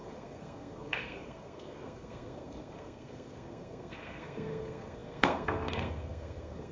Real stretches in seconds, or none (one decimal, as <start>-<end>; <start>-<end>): none